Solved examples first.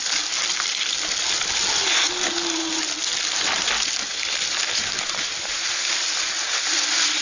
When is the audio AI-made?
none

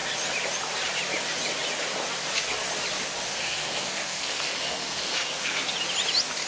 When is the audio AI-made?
3.3-5.7

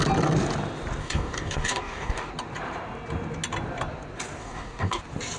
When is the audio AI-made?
1.0-2.3; 4.4-5.0

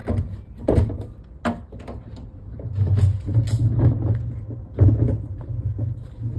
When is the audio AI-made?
none

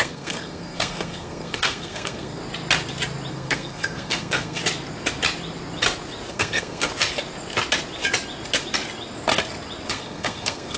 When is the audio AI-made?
0.0-2.4; 3.3-4.6; 6.3-6.9; 9.9-10.8

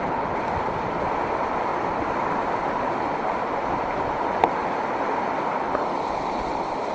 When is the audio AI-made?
none

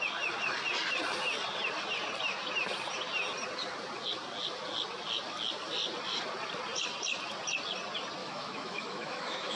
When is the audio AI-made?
8.2-9.6

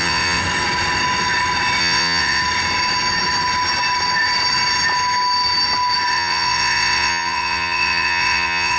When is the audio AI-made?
0.0-0.4; 1.8-2.4; 6.1-8.8